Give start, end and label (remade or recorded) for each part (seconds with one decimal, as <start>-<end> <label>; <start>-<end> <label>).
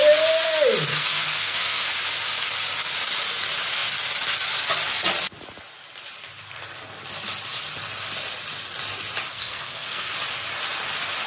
0.0-0.9 recorded; 0.9-1.9 remade; 1.9-9.3 recorded; 9.3-10.1 remade; 10.1-11.3 recorded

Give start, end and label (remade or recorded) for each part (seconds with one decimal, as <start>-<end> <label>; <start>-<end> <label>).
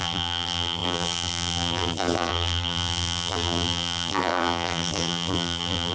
0.0-5.9 remade